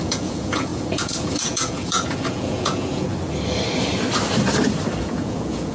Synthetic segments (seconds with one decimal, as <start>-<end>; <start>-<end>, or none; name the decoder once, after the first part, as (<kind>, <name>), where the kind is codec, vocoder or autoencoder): 0.0-3.1 (vocoder, Vocos); 5.0-5.7

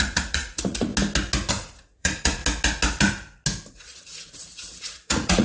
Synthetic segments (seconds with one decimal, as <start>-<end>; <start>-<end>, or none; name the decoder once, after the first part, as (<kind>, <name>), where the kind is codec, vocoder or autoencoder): 0.0-0.9 (vocoder, Vocos); 1.5-2.4; 3.7-5.4